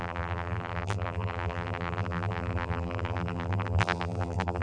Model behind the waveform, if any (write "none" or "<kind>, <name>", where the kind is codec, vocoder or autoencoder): vocoder, BigVGAN v2